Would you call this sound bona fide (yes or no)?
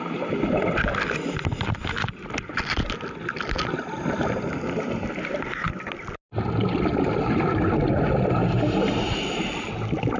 yes